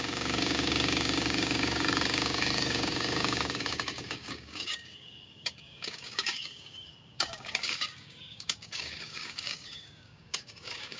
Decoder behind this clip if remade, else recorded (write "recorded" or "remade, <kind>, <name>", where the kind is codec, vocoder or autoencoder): remade, codec, DAC